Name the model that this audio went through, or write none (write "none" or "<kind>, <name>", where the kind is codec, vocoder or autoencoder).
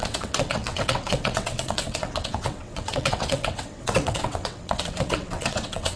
vocoder, WaveNeXt